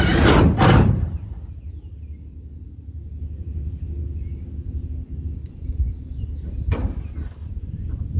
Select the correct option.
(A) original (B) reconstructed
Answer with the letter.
A